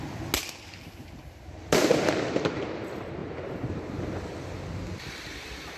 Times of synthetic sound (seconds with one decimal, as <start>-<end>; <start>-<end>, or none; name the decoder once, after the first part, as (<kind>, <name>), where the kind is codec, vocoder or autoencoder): none